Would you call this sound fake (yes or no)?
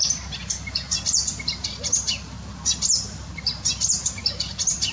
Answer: no